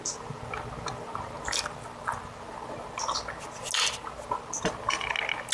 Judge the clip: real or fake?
real